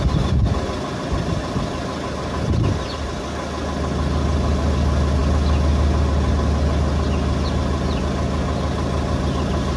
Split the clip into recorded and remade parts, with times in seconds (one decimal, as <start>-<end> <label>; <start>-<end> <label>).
0.0-9.8 recorded